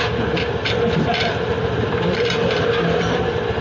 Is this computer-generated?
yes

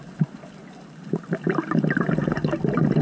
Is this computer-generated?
no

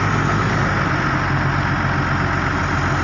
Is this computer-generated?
no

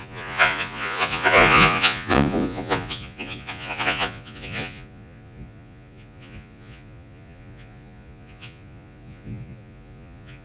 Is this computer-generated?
yes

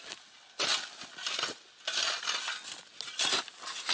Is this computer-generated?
no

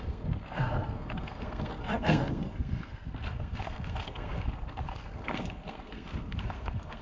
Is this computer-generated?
yes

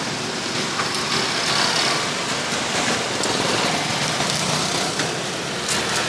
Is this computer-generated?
no